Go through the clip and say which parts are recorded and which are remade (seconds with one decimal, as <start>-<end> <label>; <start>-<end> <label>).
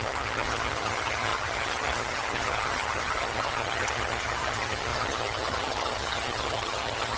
0.0-7.2 remade